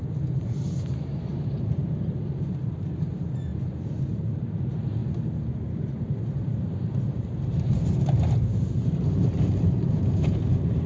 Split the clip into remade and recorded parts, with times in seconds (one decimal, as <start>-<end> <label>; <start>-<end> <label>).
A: 0.0-3.5 remade; 3.5-4.1 recorded; 4.1-5.0 remade; 5.0-6.3 recorded; 6.3-10.9 remade